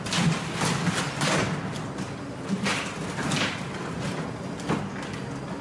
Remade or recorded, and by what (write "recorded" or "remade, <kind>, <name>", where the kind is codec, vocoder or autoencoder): recorded